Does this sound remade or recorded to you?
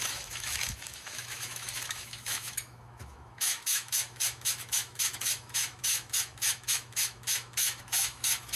remade